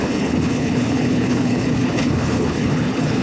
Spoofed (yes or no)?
yes